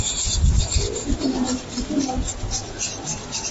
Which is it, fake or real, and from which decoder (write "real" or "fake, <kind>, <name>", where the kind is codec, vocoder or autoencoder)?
real